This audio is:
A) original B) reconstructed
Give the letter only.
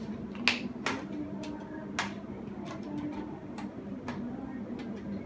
A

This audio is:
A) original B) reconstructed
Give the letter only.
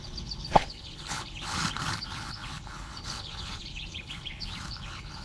B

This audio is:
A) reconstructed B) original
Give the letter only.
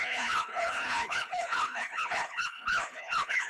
A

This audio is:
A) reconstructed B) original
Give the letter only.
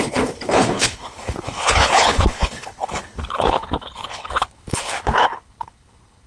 A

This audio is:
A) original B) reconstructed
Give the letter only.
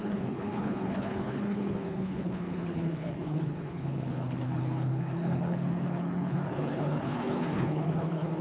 B